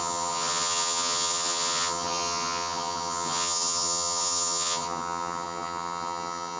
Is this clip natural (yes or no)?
no